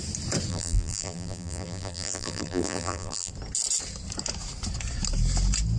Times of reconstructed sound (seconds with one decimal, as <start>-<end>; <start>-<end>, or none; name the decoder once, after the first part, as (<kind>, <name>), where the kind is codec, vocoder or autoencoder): 0.5-3.3 (vocoder, BigVGAN v2)